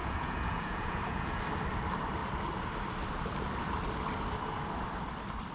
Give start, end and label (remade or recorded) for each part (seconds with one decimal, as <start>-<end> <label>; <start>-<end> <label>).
0.0-1.4 remade; 1.4-5.5 recorded